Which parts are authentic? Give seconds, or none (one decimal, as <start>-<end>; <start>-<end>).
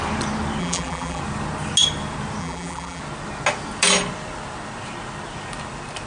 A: 0.0-0.6; 1.2-2.4; 3.0-6.1